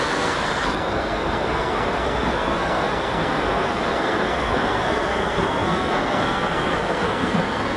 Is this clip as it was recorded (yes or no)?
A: no